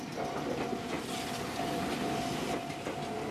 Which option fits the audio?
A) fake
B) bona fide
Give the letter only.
B